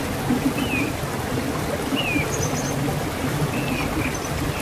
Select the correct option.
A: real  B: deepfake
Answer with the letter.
A